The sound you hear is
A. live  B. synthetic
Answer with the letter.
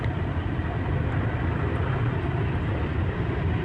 A